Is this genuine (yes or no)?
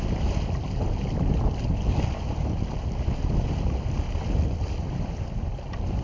yes